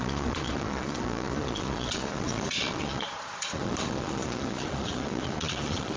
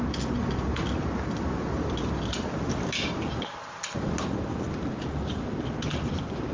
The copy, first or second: first